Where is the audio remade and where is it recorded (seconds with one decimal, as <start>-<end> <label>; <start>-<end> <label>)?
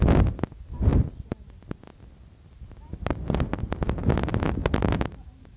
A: 0.0-4.6 recorded; 4.6-5.6 remade